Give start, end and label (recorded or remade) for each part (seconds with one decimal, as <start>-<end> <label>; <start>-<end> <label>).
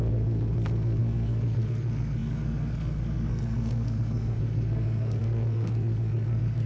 0.0-6.7 remade